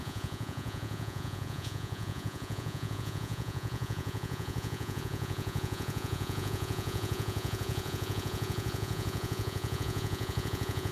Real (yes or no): no